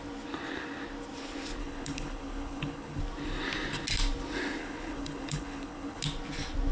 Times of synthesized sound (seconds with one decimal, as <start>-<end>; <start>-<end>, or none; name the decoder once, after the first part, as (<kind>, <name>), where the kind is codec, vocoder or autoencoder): 1.6-3.0 (codec, HILCodec); 4.6-6.0